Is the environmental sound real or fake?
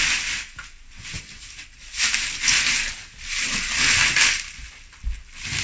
real